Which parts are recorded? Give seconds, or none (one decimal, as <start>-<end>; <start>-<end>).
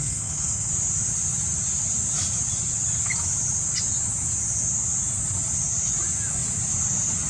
0.7-7.3